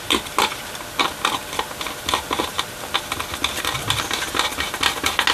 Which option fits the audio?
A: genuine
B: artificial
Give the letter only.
A